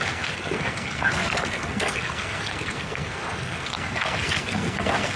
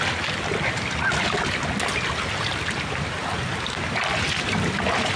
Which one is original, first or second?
second